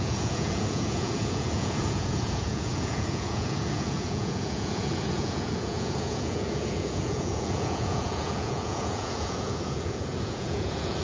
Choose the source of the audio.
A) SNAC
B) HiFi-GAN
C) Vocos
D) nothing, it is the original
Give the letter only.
C